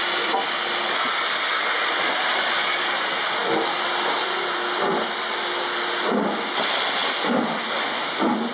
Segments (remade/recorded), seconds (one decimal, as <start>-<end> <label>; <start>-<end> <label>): 0.0-8.5 recorded